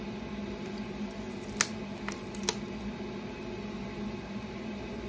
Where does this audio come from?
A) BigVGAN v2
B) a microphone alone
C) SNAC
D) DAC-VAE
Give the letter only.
B